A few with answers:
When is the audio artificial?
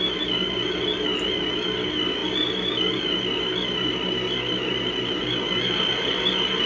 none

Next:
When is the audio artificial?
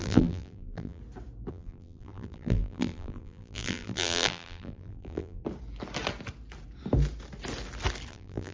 0.0-1.0 (vocoder, BigVGAN v2); 1.5-5.4; 8.1-8.5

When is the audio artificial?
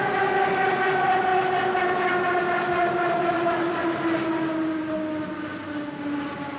none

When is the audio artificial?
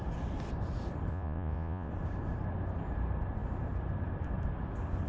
1.1-1.9 (vocoder, Vocos)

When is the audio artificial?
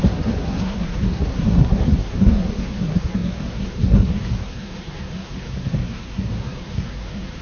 0.0-7.4 (codec, SNAC)